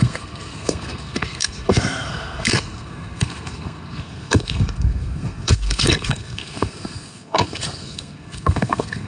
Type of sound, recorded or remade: remade